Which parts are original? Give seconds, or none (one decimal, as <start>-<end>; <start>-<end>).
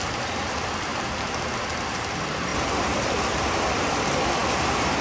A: 0.0-5.0